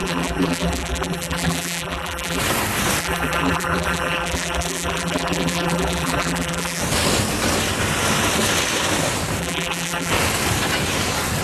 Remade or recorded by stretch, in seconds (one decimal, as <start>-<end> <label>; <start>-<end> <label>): 0.0-2.4 remade; 2.4-3.0 recorded; 3.0-6.8 remade; 6.8-9.4 recorded; 9.4-10.1 remade; 10.1-11.4 recorded